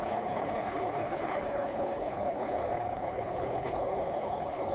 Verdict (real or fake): fake